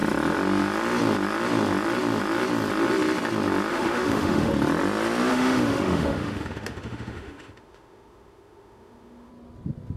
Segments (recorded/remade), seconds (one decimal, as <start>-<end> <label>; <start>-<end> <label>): 0.0-3.7 recorded; 3.7-4.5 remade; 4.5-5.3 recorded; 5.3-9.3 remade; 9.3-10.0 recorded